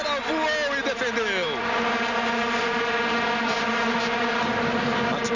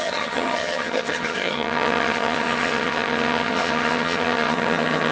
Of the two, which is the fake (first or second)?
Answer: second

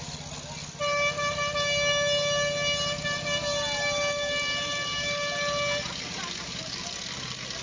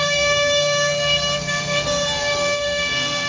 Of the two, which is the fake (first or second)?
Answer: second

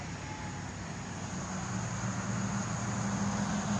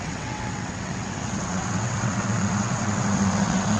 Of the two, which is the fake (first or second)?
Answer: second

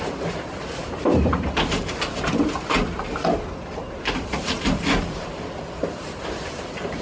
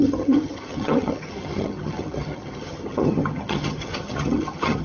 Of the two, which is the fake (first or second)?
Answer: second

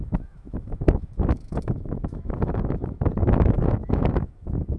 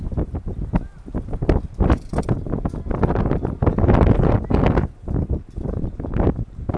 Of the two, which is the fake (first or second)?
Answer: first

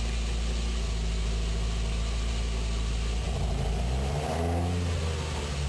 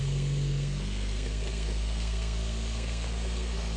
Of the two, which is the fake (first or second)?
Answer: second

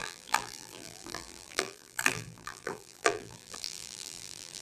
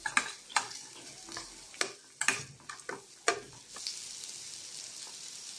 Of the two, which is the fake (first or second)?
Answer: first